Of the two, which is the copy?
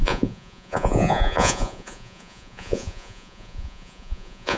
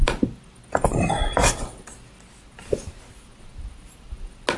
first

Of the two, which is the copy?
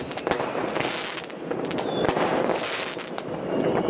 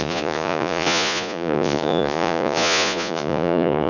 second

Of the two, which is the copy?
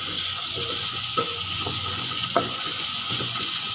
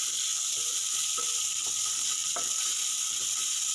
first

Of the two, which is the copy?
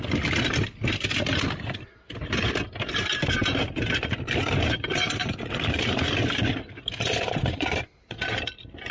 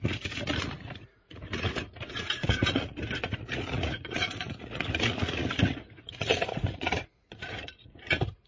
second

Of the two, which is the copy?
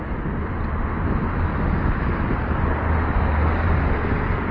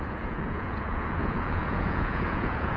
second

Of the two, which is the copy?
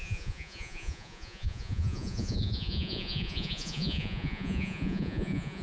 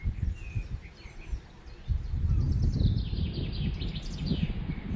first